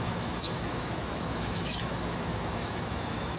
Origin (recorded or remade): remade